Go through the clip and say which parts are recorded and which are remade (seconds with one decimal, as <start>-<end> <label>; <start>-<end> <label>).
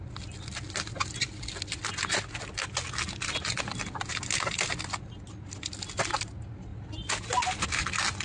0.0-8.2 recorded